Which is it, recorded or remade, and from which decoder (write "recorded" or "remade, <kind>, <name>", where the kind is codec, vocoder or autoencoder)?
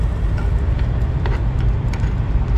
remade, vocoder, BigVGAN v2